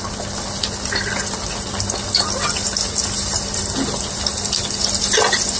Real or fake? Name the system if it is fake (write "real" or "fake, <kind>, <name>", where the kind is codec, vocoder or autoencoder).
real